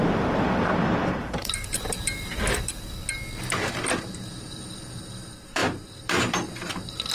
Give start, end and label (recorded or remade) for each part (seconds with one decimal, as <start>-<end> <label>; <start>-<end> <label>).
0.0-3.0 remade; 3.0-4.0 recorded; 4.0-7.1 remade